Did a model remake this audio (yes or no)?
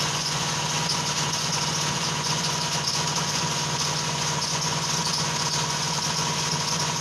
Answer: yes